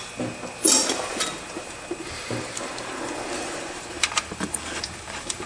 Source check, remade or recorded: remade